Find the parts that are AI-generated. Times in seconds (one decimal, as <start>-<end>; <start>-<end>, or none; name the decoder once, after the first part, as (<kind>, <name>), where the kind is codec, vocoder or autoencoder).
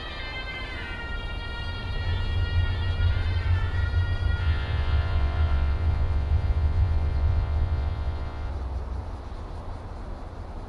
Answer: 4.4-8.5 (vocoder, Vocos)